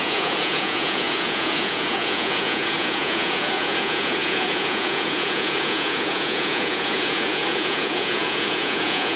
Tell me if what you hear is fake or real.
fake